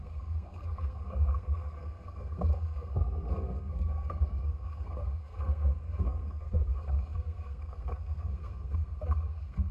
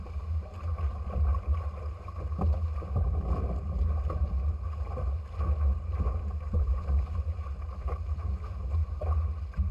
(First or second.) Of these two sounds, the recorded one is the second